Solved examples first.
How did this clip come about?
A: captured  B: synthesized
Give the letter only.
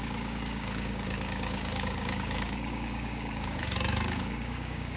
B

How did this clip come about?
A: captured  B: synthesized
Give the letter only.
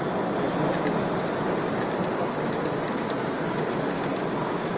A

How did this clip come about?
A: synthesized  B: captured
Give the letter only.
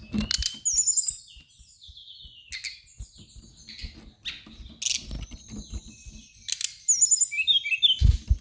B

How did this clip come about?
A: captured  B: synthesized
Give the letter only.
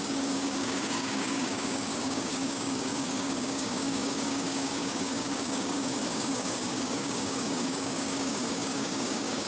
B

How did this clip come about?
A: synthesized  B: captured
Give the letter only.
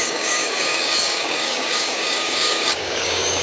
A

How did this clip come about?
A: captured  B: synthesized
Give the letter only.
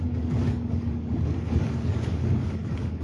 B